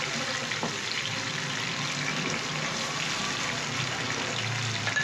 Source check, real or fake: real